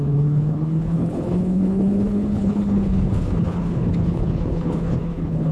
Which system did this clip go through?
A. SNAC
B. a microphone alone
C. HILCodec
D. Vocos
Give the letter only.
C